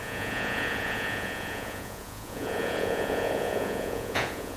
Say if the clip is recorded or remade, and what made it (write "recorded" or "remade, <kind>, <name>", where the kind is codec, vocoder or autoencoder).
remade, vocoder, Vocos